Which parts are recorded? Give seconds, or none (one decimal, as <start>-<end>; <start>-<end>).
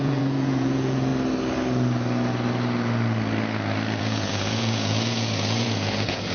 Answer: 1.1-4.0